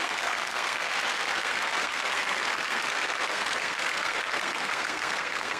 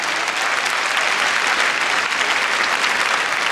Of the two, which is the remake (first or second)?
first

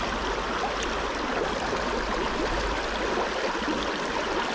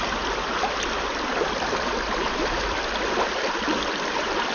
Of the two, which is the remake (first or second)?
second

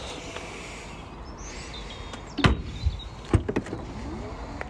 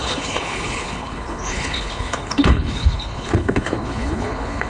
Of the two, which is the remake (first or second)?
second